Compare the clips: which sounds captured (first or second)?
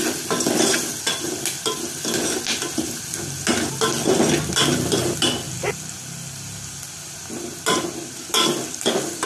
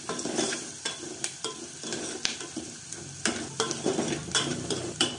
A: first